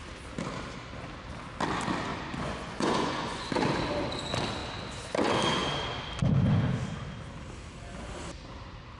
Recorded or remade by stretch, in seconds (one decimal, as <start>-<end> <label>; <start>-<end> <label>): 0.0-2.1 recorded; 2.1-3.5 remade; 3.5-9.0 recorded